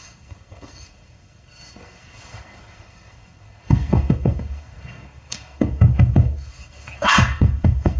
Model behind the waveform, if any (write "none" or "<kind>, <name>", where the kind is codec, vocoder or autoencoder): codec, SNAC